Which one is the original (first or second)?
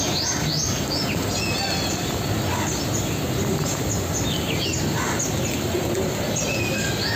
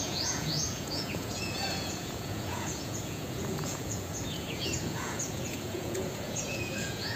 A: first